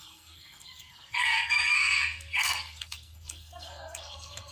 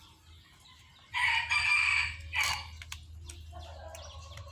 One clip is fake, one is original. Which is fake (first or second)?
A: first